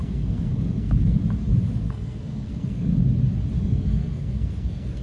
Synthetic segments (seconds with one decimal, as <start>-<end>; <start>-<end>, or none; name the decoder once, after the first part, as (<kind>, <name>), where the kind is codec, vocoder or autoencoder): 0.0-1.2 (codec, SNAC); 1.8-2.9; 3.6-5.0